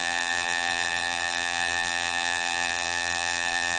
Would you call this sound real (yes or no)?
no